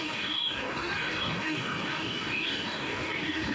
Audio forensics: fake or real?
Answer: fake